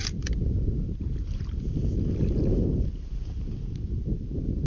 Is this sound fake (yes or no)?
no